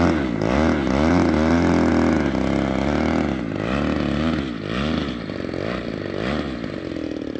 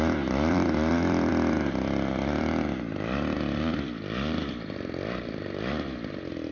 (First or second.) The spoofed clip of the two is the second